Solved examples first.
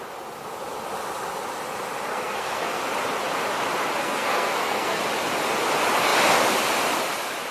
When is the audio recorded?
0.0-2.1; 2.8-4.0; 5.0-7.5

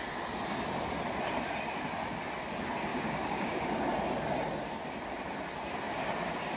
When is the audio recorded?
0.0-2.9; 3.8-6.6

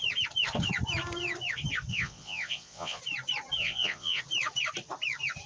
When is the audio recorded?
0.0-1.9; 3.0-3.6; 4.2-5.5

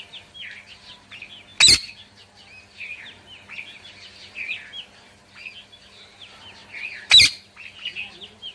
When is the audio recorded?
0.0-8.5

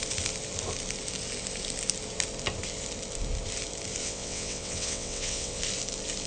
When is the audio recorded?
0.0-4.0; 5.6-6.3